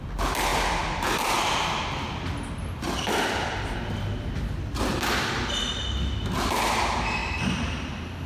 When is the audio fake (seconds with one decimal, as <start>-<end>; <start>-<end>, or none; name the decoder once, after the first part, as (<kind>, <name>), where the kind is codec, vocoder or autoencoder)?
none